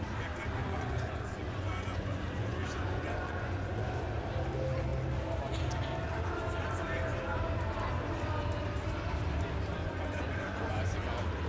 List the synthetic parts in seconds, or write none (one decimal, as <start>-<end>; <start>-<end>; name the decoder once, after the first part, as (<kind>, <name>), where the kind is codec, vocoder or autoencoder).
0.6-4.1 (vocoder, Vocos); 9.8-11.1